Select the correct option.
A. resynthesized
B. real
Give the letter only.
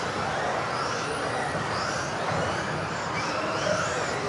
B